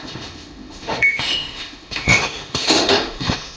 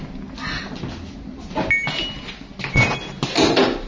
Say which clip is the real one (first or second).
second